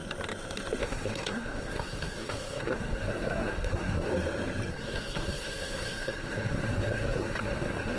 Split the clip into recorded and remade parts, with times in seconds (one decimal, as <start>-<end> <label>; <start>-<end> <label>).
0.0-0.8 recorded; 0.8-4.1 remade; 4.1-4.7 recorded; 4.7-8.0 remade